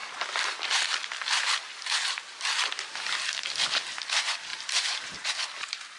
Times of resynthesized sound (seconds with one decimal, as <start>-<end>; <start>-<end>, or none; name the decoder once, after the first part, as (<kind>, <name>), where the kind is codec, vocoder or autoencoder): 4.5-5.3 (vocoder, BigVGAN v2)